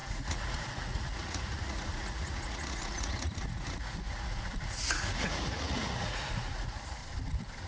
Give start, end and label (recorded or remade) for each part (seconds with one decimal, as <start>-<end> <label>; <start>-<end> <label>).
0.0-7.0 remade; 7.0-7.7 recorded